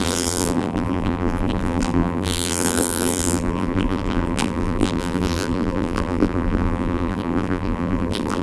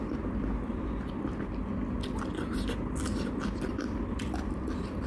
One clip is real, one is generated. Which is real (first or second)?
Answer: second